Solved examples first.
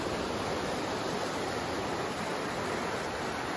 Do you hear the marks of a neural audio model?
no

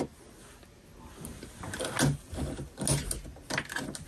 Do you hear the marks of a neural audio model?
no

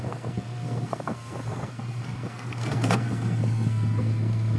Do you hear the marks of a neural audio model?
yes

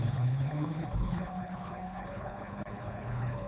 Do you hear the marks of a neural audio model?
yes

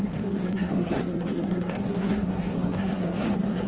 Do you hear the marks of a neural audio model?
yes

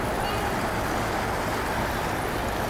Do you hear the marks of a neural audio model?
no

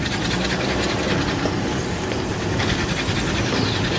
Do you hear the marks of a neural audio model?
no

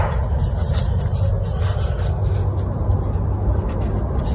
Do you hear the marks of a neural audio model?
no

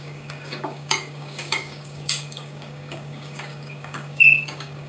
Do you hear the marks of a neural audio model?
yes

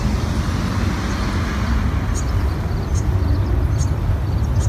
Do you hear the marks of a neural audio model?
no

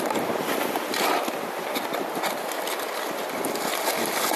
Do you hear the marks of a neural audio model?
no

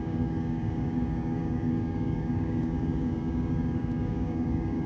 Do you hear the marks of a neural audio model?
yes